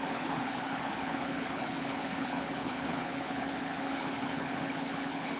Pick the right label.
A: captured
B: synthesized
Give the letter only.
B